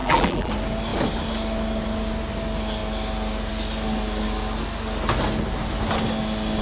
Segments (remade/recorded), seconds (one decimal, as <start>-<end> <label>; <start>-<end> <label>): 0.0-0.5 remade; 0.5-6.6 recorded

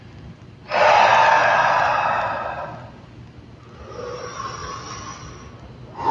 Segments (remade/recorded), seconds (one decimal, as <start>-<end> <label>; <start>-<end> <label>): 0.0-4.6 recorded; 4.6-5.5 remade; 5.5-6.1 recorded